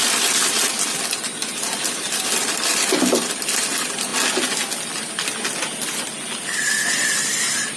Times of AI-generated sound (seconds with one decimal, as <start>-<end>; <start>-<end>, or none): 0.0-4.1; 6.7-7.8